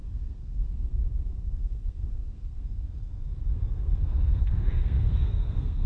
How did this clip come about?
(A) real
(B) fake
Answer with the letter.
B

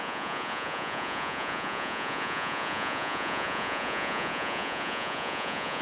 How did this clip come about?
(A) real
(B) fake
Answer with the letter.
B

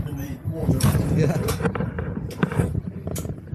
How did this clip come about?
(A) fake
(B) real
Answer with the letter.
A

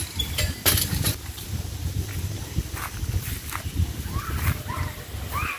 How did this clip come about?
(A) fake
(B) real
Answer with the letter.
B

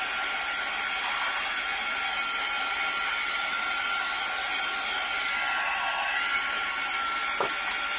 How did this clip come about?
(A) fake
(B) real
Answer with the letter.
B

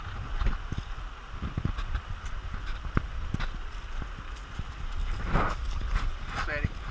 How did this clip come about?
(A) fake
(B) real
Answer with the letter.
B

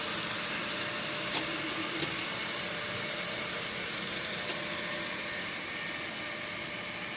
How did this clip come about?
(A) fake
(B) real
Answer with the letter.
B